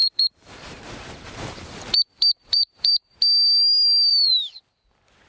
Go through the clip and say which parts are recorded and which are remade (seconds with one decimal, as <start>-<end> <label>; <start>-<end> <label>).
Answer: 0.0-3.2 remade; 3.2-4.1 recorded; 4.1-4.6 remade; 4.6-5.3 recorded

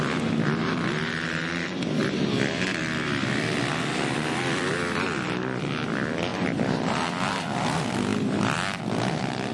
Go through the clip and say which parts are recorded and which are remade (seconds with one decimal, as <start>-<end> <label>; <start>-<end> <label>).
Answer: 0.0-9.5 recorded